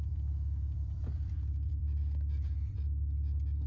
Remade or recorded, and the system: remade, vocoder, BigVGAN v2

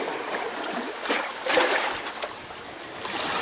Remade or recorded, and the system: recorded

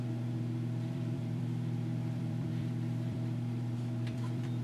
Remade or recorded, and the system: remade, vocoder, BigVGAN v2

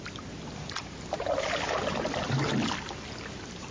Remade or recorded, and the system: remade, vocoder, BigVGAN v2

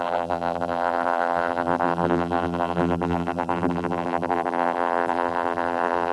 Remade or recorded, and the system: remade, vocoder, BigVGAN v2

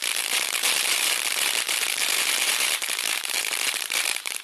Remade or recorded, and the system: remade, vocoder, BigVGAN v2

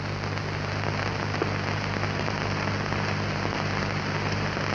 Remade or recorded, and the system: recorded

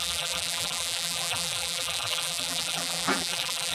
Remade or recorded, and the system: remade, vocoder, BigVGAN v2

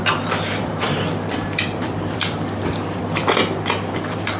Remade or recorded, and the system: remade, vocoder, BigVGAN v2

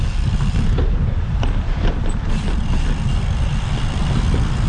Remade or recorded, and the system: remade, vocoder, BigVGAN v2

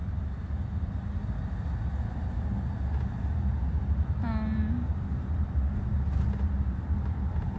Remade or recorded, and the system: recorded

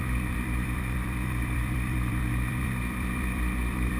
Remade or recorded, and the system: remade, vocoder, BigVGAN v2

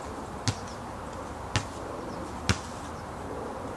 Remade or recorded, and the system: recorded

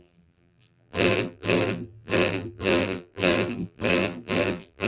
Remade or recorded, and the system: remade, vocoder, BigVGAN v2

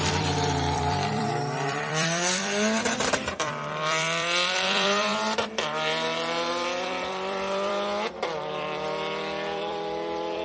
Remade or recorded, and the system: remade, vocoder, BigVGAN v2